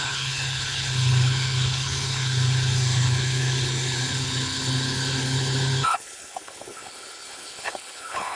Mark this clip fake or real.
fake